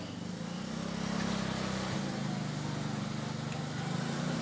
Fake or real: real